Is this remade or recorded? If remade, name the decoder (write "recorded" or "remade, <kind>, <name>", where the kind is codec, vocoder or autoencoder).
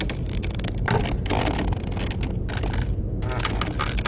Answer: recorded